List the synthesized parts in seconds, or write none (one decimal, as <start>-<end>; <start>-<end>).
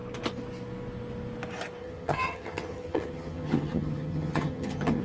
1.8-5.0